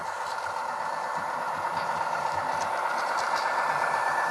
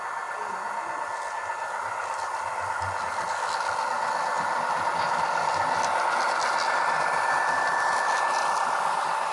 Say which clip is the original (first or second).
second